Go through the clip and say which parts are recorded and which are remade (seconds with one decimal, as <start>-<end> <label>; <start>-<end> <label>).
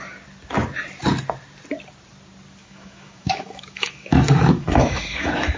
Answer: 0.0-2.6 recorded; 2.6-5.6 remade